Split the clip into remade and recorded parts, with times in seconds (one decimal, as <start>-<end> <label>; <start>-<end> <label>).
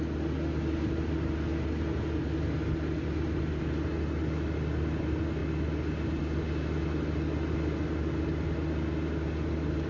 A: 0.0-9.9 recorded